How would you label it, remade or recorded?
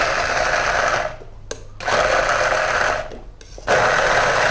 recorded